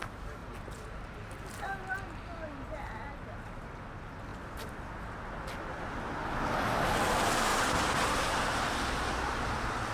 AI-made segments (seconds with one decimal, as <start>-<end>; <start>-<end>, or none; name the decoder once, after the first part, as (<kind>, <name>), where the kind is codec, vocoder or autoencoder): 4.3-5.8 (vocoder, BigVGAN v2); 7.5-9.9